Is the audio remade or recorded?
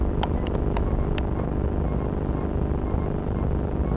recorded